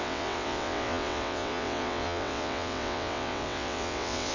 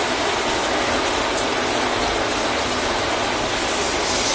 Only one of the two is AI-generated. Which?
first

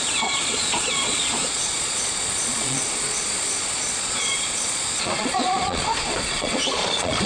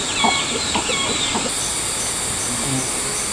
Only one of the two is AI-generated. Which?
first